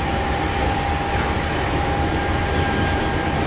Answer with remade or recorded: recorded